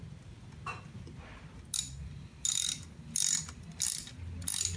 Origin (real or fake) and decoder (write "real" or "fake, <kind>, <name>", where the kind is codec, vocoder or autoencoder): real